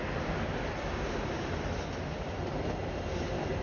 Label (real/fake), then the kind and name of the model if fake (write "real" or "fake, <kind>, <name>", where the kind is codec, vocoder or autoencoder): real